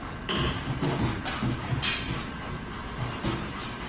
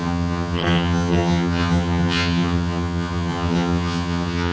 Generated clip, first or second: second